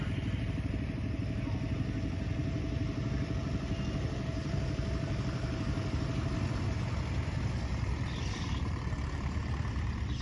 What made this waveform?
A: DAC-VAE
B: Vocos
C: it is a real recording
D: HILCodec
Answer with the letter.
C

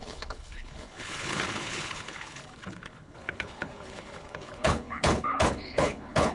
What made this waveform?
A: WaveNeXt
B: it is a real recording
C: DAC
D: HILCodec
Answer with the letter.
D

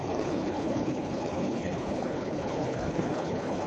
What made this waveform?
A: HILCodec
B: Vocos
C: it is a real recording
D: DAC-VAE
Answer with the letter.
A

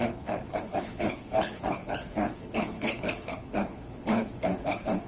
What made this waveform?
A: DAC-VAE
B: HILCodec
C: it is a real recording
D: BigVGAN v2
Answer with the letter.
B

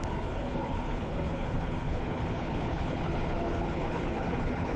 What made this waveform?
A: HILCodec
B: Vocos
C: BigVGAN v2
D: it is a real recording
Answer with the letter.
A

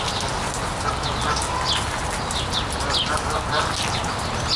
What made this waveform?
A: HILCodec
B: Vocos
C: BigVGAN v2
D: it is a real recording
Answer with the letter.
D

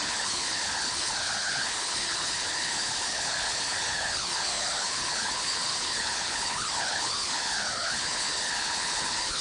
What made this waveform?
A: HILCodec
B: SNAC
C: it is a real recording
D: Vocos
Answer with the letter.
A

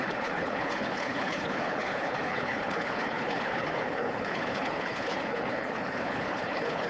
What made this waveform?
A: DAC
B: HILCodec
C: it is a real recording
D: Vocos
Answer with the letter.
B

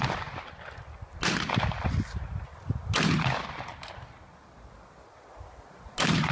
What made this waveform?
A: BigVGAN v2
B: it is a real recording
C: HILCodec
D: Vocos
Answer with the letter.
B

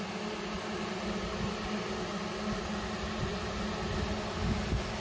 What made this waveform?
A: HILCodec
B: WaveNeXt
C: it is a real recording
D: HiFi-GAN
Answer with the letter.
C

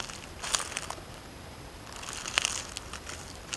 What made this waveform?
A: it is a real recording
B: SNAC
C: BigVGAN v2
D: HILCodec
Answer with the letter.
A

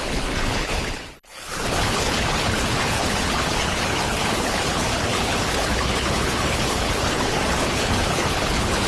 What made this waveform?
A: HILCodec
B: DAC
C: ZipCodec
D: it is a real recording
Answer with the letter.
A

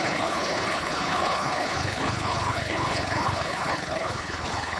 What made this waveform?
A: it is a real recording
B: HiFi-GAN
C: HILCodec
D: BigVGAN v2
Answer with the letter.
C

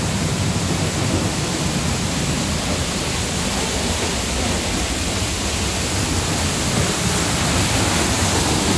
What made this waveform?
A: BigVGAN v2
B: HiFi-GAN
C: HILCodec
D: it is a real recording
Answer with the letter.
D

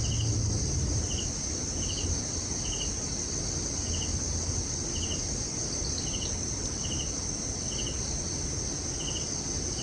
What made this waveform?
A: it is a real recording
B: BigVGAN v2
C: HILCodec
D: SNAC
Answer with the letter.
A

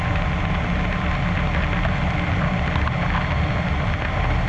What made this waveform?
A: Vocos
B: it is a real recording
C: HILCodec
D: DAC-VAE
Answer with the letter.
B